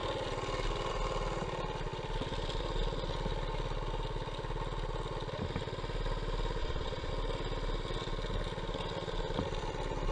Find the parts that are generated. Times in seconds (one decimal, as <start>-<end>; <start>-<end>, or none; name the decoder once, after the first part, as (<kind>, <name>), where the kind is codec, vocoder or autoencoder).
6.6-7.1 (vocoder, Vocos)